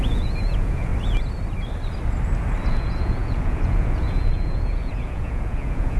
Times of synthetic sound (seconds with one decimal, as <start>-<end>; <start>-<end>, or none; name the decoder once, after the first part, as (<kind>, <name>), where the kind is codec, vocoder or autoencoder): 0.0-0.9 (vocoder, Vocos); 2.7-6.0